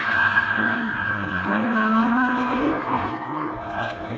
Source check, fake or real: fake